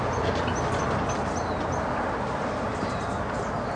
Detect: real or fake real